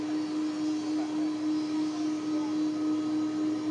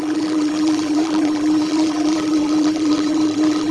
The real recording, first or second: first